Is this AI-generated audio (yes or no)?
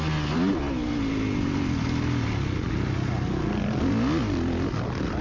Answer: no